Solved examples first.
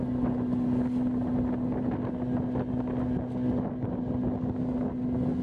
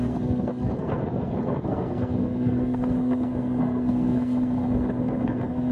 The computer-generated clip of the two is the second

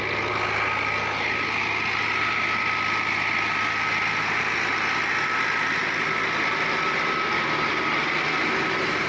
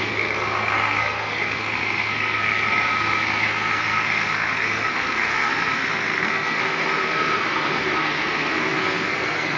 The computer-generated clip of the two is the second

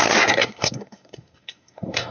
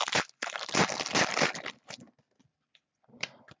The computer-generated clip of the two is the first